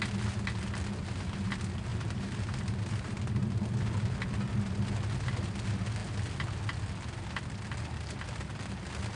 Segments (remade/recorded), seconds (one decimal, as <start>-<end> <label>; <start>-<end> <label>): 0.0-1.9 recorded; 1.9-3.2 remade; 3.2-9.2 recorded